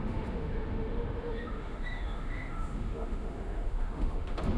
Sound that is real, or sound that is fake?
fake